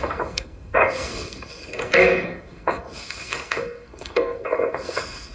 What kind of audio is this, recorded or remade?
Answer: remade